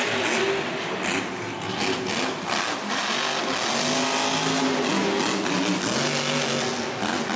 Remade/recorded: recorded